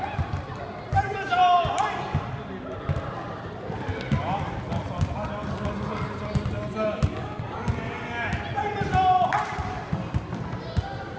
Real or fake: real